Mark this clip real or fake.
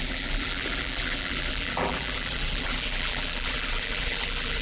fake